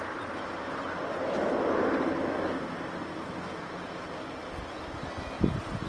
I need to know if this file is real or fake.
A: real